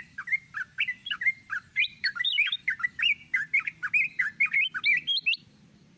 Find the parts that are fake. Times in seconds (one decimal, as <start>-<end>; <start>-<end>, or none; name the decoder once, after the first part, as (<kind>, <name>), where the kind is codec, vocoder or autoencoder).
1.0-2.6 (vocoder, BigVGAN v2)